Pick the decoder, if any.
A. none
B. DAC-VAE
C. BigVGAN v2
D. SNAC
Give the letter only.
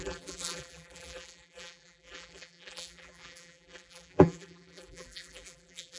C